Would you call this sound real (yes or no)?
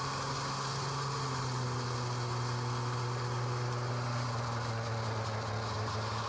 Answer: yes